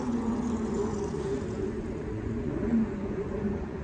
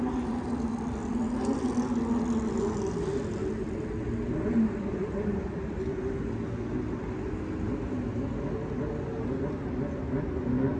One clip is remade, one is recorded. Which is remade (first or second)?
first